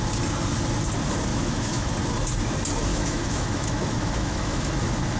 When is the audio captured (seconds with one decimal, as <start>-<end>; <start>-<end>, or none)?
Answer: 0.0-1.3; 1.9-2.9; 4.7-5.2